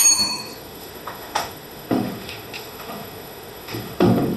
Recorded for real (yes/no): no